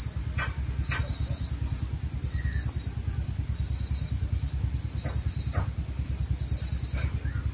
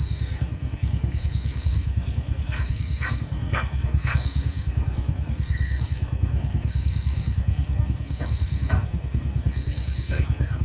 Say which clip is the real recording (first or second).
first